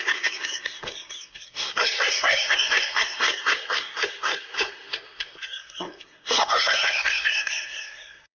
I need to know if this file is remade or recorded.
remade